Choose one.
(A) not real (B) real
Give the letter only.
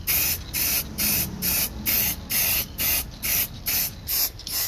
B